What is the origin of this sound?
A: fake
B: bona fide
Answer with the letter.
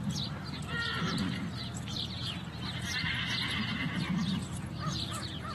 B